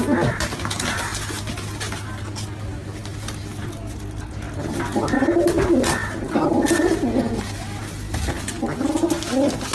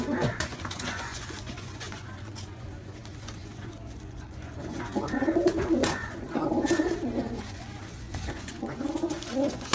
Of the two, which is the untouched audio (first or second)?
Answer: first